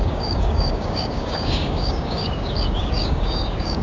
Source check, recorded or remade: remade